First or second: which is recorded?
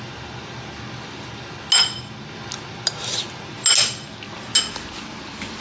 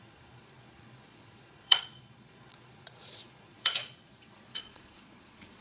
first